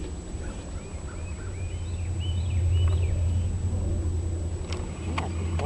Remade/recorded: recorded